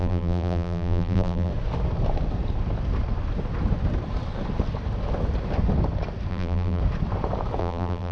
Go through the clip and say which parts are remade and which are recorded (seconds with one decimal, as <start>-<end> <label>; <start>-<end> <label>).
0.0-1.5 remade; 1.5-6.3 recorded; 6.3-6.8 remade; 6.8-7.6 recorded; 7.6-8.1 remade